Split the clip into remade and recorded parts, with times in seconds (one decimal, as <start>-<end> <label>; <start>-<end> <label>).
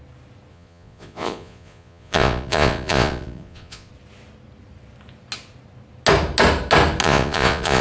0.0-0.5 recorded; 0.5-3.9 remade; 3.9-7.0 recorded; 7.0-7.8 remade